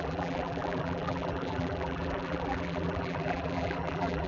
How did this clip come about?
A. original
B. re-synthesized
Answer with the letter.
B